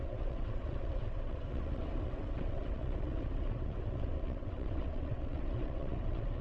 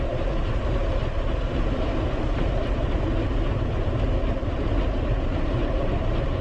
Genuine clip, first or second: second